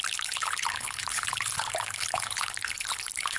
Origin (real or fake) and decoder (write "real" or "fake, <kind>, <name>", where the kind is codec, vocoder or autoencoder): fake, codec, HILCodec